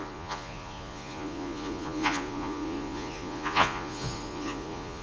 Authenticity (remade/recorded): remade